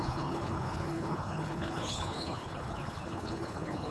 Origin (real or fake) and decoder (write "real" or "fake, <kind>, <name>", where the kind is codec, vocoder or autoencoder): fake, codec, HILCodec